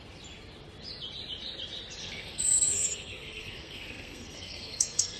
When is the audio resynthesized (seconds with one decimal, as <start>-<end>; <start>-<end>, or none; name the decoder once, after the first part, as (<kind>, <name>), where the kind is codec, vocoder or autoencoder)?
2.0-5.2 (codec, SNAC)